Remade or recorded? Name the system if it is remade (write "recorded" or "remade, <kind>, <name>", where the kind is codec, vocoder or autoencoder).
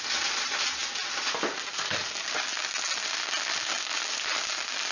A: recorded